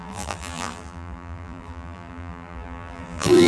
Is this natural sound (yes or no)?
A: no